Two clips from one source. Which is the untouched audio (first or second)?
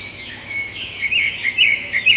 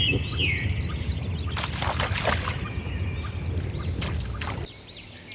second